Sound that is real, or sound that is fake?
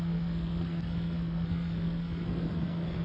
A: fake